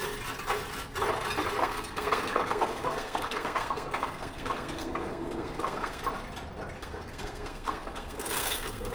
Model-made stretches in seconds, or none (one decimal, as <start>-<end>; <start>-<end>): 1.6-6.0; 6.8-8.9